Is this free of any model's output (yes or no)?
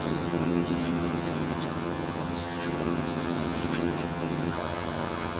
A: no